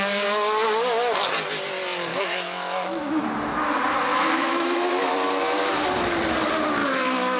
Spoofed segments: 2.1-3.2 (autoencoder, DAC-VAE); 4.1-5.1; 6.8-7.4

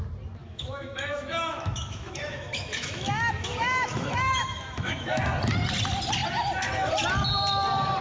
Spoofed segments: 0.4-5.2 (autoencoder, DAC-VAE)

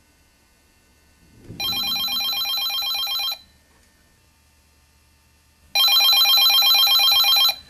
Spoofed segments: none

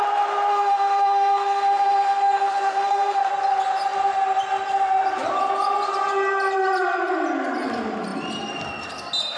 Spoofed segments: 0.5-3.3 (autoencoder, DAC-VAE)

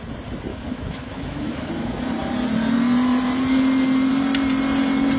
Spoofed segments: 0.5-1.7 (autoencoder, DAC-VAE)

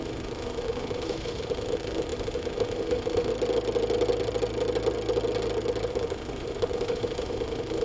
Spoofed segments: 0.0-3.3 (autoencoder, DAC-VAE); 5.9-7.8